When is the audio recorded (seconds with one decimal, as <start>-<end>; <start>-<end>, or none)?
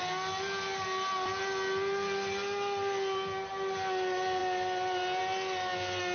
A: 0.0-6.1